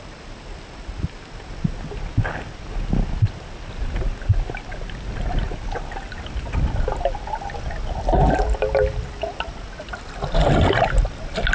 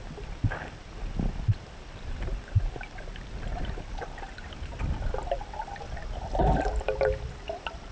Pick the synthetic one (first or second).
second